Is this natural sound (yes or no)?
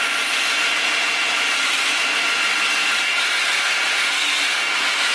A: yes